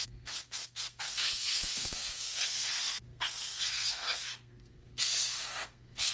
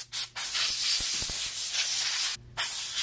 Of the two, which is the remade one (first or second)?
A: first